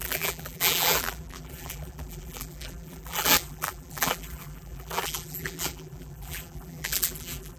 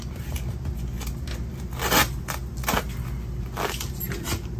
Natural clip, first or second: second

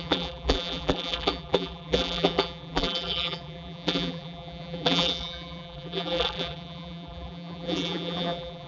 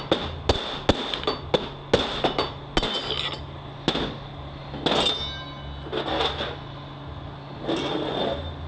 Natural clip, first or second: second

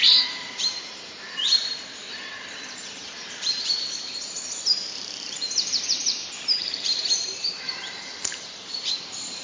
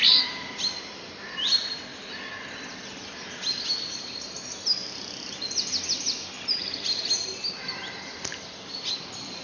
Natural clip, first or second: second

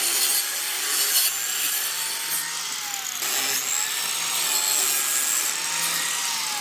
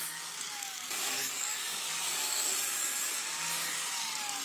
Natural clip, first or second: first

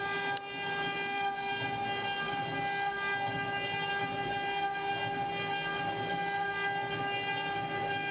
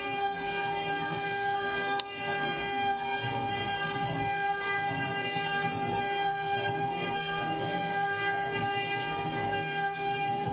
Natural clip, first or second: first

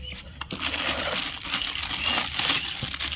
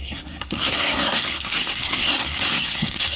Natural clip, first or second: first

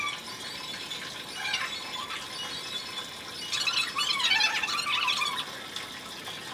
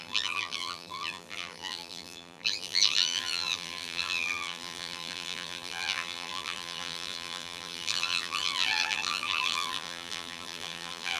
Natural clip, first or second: first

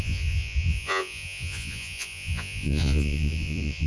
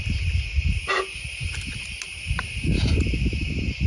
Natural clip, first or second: second